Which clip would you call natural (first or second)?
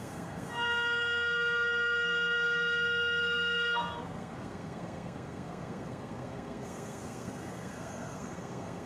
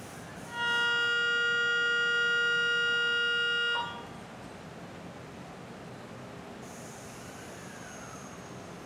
second